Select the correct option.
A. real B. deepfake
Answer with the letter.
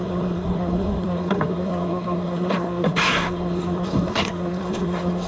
B